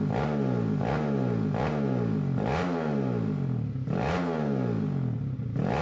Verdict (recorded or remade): recorded